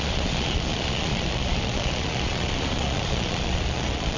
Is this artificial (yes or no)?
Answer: yes